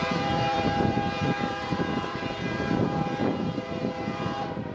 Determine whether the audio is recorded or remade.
remade